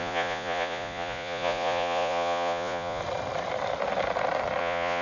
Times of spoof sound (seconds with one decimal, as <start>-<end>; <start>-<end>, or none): 0.0-3.0; 4.6-5.0